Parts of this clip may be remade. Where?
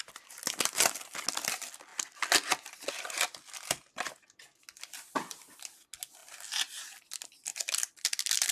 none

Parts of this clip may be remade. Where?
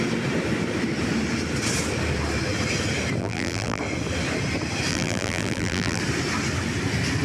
3.2-3.8; 4.9-6.0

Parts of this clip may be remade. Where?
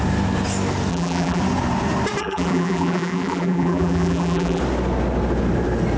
0.9-1.4; 2.2-4.6